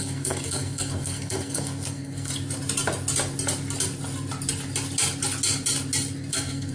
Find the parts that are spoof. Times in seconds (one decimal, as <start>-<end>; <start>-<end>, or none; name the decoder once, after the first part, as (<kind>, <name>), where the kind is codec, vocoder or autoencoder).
0.0-2.3 (codec, SNAC); 6.3-6.7